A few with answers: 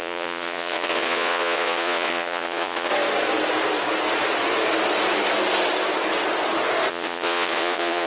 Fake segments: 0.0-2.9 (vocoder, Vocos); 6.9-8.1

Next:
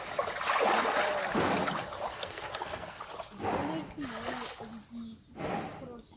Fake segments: 2.1-3.0 (codec, SNAC)

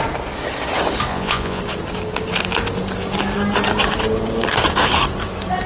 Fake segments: 1.1-1.6 (vocoder, Vocos)

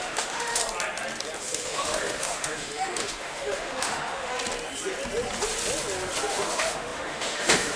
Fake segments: 0.0-0.6 (autoencoder, DAC-VAE); 1.4-4.3; 6.3-7.8

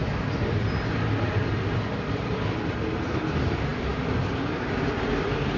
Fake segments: 0.0-5.6 (vocoder, BigVGAN v2)

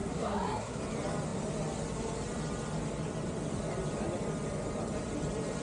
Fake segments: 0.0-0.8 (codec, SNAC)